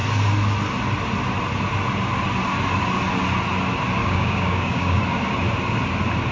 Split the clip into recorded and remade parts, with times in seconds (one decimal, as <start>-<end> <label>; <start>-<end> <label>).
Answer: 0.0-4.0 recorded; 4.0-5.0 remade; 5.0-6.3 recorded